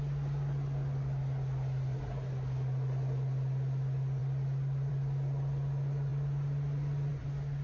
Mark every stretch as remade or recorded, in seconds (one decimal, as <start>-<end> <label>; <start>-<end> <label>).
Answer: 0.0-7.6 recorded